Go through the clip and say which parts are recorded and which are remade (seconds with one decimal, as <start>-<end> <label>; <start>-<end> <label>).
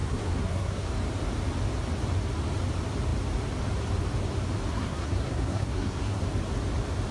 0.0-0.9 remade; 0.9-4.7 recorded; 4.7-6.2 remade; 6.2-7.1 recorded